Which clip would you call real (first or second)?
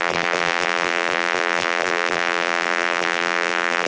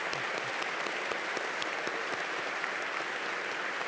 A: second